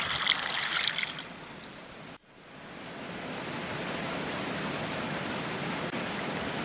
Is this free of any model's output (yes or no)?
yes